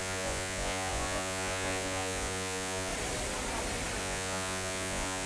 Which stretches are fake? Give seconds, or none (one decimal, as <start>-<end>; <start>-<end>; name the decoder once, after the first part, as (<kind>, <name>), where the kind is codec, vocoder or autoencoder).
0.0-2.9 (vocoder, Vocos); 4.0-5.3